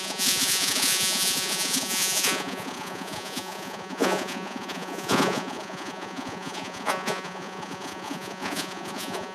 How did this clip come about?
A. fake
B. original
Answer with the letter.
A